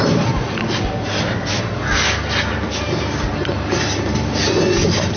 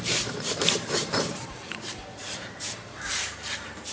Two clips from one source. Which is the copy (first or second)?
second